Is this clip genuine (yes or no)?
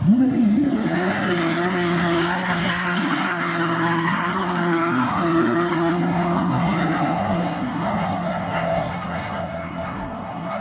no